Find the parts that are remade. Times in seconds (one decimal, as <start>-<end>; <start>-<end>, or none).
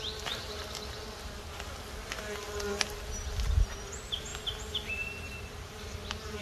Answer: none